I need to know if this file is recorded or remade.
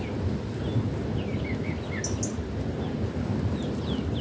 recorded